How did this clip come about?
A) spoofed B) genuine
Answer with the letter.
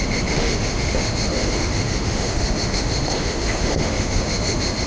A